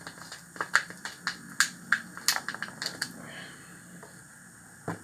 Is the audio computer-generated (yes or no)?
no